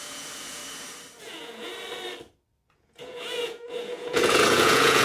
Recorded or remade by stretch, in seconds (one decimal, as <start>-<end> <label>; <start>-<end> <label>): 0.0-0.6 remade; 0.6-1.2 recorded; 1.2-1.7 remade; 1.7-2.7 recorded; 2.7-5.0 remade